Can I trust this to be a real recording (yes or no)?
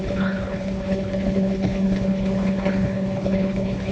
no